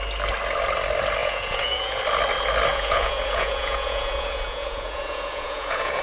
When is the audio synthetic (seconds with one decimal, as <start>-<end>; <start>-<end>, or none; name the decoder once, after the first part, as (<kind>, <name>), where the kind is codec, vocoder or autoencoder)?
1.2-2.0 (vocoder, Vocos); 2.7-6.0